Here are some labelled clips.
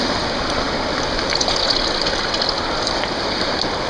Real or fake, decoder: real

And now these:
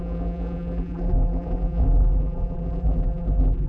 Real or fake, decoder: fake, vocoder, BigVGAN v2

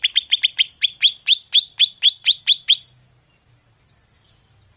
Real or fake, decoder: fake, vocoder, BigVGAN v2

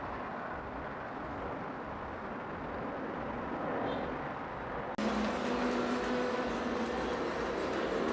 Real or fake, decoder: real